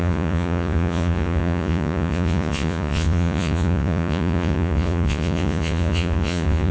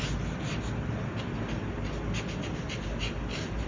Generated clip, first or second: first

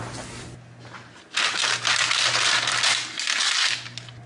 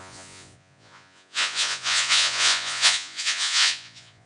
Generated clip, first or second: second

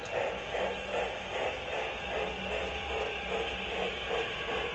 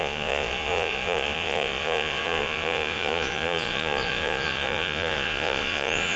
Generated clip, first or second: second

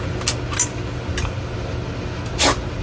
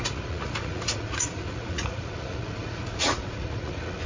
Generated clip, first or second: second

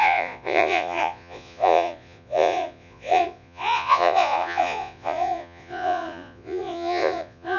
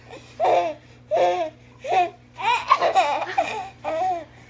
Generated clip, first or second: first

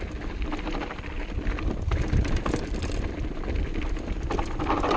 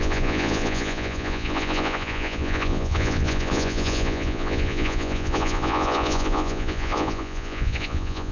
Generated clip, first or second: second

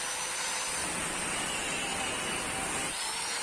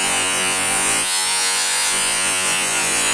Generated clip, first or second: second